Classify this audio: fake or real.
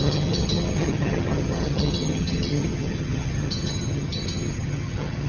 fake